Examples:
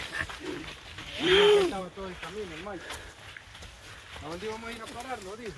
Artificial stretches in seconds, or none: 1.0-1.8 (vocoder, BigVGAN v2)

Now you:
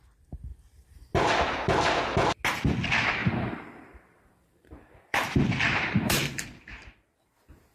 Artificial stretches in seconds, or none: 3.2-7.3 (vocoder, BigVGAN v2)